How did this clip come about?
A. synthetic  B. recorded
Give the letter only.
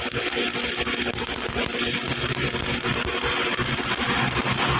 B